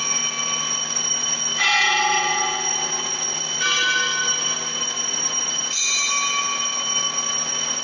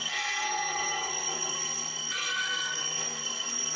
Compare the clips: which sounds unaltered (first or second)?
first